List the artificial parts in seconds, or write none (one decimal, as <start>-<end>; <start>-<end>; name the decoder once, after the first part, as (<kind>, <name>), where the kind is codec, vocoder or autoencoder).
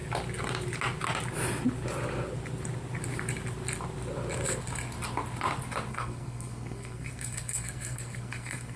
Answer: 5.9-8.8 (codec, SNAC)